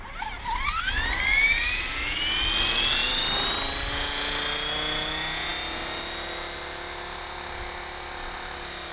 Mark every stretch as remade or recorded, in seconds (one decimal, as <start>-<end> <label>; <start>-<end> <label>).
0.0-8.9 recorded